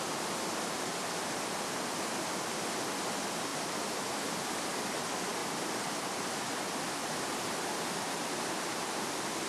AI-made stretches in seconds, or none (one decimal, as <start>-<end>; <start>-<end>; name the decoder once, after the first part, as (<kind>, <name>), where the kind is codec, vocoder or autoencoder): 3.5-4.3 (vocoder, BigVGAN v2); 5.4-6.3; 7.0-7.5